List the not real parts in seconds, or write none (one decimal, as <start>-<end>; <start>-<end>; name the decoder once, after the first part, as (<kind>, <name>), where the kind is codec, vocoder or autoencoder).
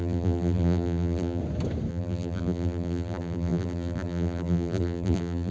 0.0-1.4 (vocoder, BigVGAN v2); 1.9-5.5